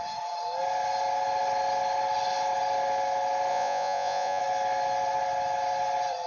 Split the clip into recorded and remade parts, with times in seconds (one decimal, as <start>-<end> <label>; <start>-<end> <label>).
0.0-3.5 recorded; 3.5-4.4 remade; 4.4-6.3 recorded